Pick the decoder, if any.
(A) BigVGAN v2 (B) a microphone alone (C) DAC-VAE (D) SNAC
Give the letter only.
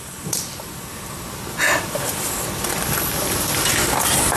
A